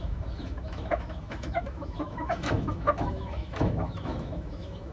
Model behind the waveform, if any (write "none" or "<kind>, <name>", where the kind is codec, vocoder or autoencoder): autoencoder, DAC-VAE